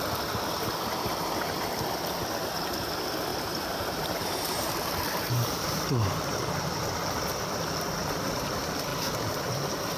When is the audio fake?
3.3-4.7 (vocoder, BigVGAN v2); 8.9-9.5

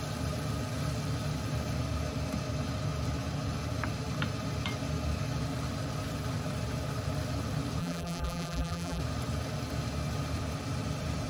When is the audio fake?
7.8-9.0 (vocoder, BigVGAN v2)

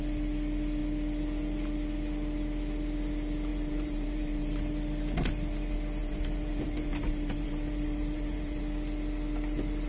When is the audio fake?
3.5-4.6 (vocoder, BigVGAN v2); 6.0-8.6